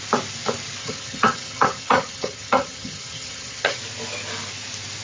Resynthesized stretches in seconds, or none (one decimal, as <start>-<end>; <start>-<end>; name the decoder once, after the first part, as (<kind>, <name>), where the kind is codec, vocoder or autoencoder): 0.8-3.8 (vocoder, HiFi-GAN)